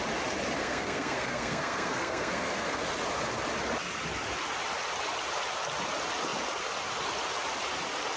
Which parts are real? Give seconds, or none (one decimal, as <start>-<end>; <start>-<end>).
0.0-0.6; 2.8-8.2